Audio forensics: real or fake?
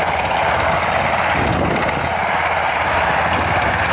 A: real